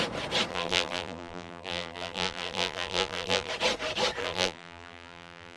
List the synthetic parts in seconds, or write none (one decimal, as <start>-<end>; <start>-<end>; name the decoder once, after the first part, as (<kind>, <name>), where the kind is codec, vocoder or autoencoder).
0.5-3.5 (vocoder, BigVGAN v2); 4.2-5.6